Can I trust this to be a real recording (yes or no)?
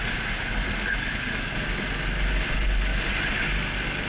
yes